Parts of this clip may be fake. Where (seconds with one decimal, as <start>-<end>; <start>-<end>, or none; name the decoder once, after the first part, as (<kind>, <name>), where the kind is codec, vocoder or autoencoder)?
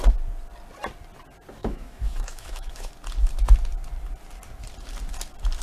1.6-2.9 (autoencoder, DAC-VAE)